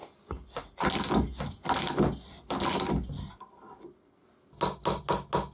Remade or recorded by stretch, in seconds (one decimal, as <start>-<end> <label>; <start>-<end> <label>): 0.0-5.5 recorded